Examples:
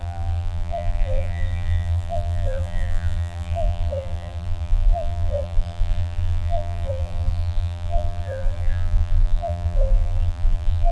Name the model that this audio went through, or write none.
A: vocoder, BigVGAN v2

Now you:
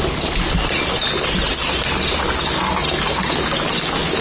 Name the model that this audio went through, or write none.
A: none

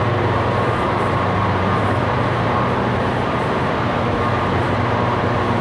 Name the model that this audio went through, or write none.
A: vocoder, BigVGAN v2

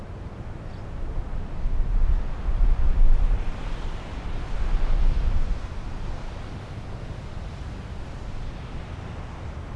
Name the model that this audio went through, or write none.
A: none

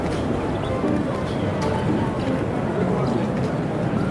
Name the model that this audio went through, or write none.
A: none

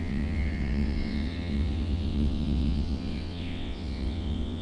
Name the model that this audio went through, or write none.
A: vocoder, WaveNeXt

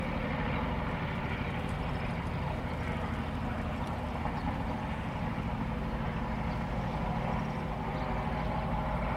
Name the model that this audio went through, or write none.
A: none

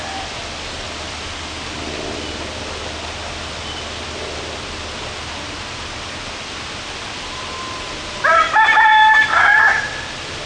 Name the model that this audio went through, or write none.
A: none